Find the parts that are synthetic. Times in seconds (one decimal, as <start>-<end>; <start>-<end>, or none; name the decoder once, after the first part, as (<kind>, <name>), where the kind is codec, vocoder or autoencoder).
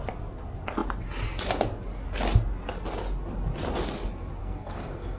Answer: 4.4-5.2 (codec, SNAC)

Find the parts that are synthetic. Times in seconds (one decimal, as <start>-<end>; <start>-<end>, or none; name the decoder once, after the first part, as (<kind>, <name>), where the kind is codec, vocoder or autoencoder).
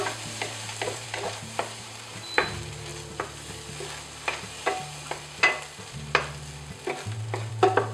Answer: 0.0-2.9 (vocoder, BigVGAN v2); 7.5-7.9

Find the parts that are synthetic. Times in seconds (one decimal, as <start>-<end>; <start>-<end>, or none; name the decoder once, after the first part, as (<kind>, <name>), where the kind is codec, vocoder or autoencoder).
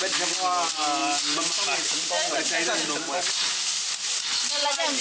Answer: none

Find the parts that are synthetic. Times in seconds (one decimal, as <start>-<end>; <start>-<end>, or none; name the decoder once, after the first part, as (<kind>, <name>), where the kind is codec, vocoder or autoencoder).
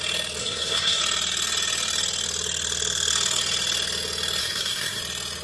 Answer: 0.4-1.0 (codec, SNAC); 4.4-5.0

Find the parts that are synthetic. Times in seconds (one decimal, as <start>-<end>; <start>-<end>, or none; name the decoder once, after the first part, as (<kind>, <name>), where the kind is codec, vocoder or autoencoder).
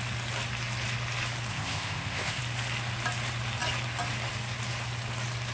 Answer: 1.5-2.4 (codec, ZipCodec)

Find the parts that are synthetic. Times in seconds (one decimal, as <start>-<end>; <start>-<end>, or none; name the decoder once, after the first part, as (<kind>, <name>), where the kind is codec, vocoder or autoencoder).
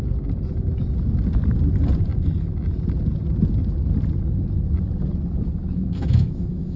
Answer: 5.6-6.8 (autoencoder, DAC-VAE)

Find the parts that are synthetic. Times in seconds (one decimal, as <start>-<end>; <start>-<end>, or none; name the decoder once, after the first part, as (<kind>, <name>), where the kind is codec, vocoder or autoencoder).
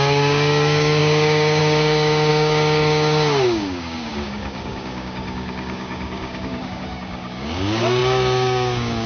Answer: 0.0-9.1 (codec, DAC)